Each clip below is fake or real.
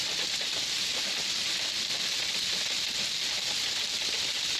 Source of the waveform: real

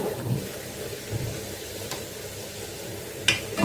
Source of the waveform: fake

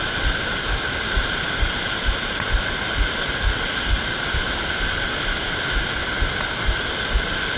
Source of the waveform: real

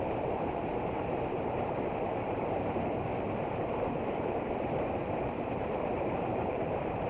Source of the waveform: fake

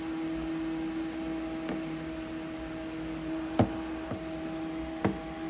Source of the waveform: real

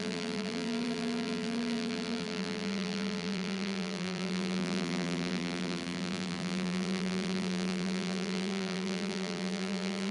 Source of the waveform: fake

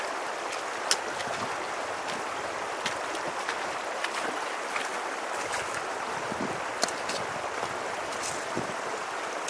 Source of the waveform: real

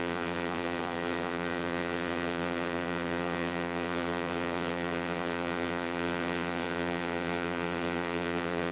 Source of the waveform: fake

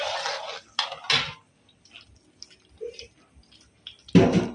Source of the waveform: real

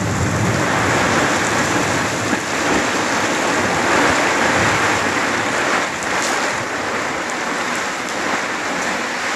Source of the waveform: real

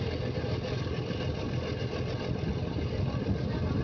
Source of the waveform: real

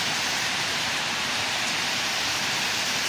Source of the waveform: fake